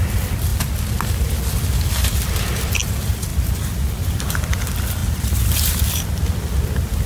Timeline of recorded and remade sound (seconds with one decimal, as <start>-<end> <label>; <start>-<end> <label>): 0.0-3.3 recorded; 3.3-4.2 remade; 4.2-7.1 recorded